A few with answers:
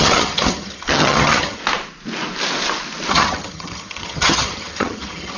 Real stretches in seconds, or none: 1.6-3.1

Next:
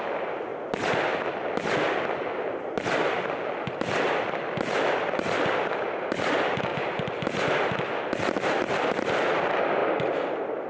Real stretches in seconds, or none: 0.0-10.7

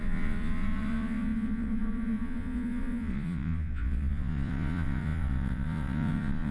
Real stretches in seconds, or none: none

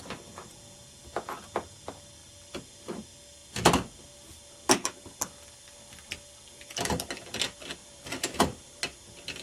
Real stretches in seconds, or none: 0.0-7.8; 8.8-9.4